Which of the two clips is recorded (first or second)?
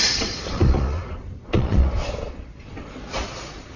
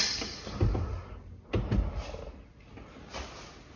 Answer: second